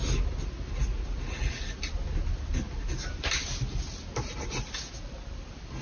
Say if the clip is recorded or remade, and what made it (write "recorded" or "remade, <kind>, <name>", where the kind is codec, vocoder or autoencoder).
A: recorded